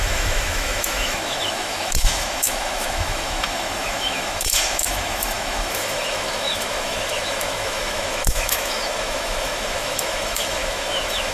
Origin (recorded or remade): remade